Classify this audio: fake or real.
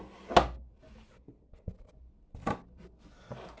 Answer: real